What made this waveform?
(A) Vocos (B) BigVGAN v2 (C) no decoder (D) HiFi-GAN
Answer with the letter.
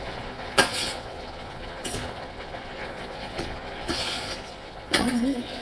A